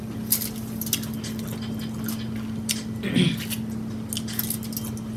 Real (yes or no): yes